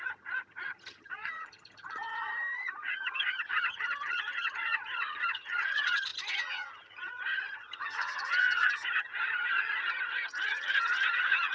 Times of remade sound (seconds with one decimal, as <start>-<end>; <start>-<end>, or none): 0.0-11.5

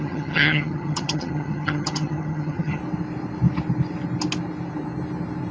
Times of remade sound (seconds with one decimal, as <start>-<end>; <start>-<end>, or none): 0.0-2.8

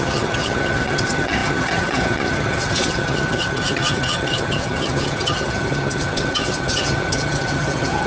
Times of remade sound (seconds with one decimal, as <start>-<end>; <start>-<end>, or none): 0.0-8.1

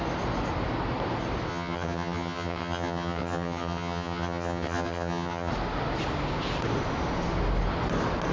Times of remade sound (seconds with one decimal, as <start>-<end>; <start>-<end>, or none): 1.5-5.5

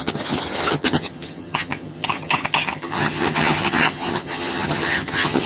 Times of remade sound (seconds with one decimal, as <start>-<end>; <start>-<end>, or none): 0.0-5.5